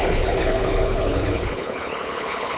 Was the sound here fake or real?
fake